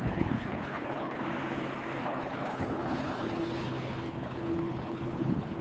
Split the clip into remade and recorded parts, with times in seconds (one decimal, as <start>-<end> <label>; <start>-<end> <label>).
0.0-1.2 remade; 1.2-2.0 recorded; 2.0-5.6 remade